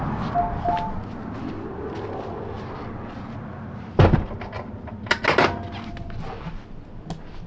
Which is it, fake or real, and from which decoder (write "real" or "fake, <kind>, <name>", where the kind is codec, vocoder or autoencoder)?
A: real